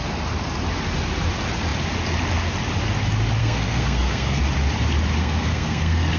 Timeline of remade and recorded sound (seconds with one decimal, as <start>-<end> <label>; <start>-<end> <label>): 0.0-3.4 recorded; 3.4-4.4 remade; 4.4-5.2 recorded; 5.2-6.2 remade